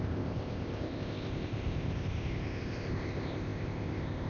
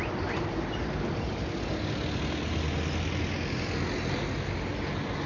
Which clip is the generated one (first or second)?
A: first